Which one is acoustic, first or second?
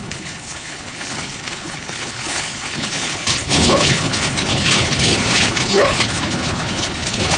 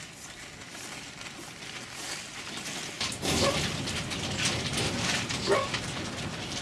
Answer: second